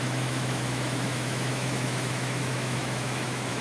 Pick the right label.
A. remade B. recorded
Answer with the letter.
A